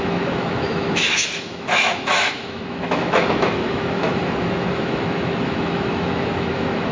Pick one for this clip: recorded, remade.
remade